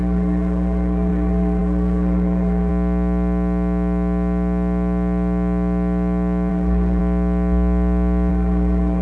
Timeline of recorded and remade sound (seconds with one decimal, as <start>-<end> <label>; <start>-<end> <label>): 0.0-2.7 remade; 2.7-6.5 recorded; 6.5-7.0 remade; 7.0-8.3 recorded; 8.3-9.0 remade